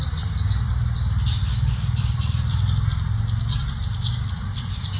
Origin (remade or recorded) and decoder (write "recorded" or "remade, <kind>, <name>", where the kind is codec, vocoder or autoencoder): recorded